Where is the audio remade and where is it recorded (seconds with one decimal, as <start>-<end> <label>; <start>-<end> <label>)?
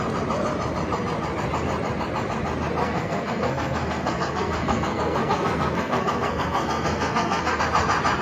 0.0-2.8 recorded; 2.8-7.6 remade; 7.6-8.2 recorded